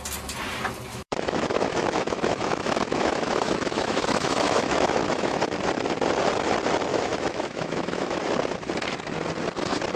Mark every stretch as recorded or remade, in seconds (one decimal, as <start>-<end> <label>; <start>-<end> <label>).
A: 0.0-0.9 recorded; 0.9-5.4 remade; 5.4-6.9 recorded; 6.9-8.2 remade; 8.2-10.0 recorded